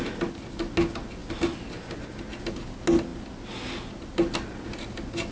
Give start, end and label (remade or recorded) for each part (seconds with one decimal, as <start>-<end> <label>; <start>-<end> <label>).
0.0-5.3 recorded